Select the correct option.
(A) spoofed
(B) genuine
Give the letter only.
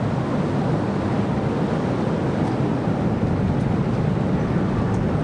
B